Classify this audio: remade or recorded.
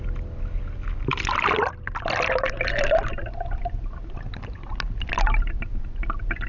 recorded